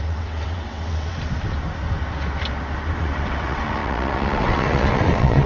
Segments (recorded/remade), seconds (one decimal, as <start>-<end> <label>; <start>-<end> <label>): 0.0-1.1 remade; 1.1-3.0 recorded; 3.0-5.5 remade